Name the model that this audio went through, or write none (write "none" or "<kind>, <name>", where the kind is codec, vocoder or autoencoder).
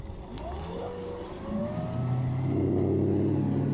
none